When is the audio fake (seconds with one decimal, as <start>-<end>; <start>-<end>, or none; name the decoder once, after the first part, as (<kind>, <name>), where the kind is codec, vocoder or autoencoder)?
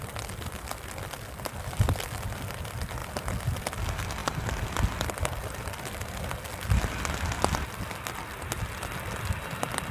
none